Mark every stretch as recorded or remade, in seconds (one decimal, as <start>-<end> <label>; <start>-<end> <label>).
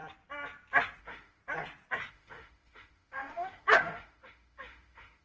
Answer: 0.0-1.0 recorded; 1.0-1.4 remade; 1.4-2.1 recorded; 2.1-5.2 remade